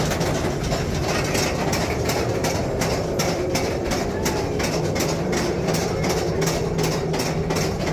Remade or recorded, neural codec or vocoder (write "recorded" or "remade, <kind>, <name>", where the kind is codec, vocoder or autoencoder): recorded